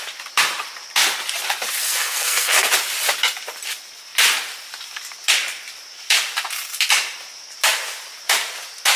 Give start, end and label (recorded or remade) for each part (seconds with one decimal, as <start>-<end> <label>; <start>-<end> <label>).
0.0-1.8 recorded; 1.8-2.7 remade; 2.7-9.0 recorded